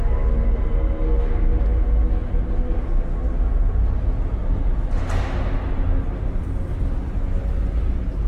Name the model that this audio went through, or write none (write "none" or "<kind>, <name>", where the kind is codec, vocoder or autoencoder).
none